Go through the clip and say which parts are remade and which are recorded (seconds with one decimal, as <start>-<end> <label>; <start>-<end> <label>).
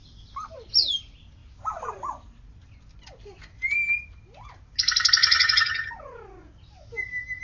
0.0-5.2 recorded; 5.2-5.9 remade; 5.9-7.4 recorded